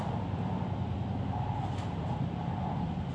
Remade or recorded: recorded